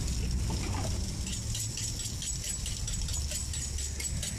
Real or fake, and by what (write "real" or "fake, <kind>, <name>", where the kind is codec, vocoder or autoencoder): real